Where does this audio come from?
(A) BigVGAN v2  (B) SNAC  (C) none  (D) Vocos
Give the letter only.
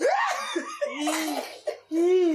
C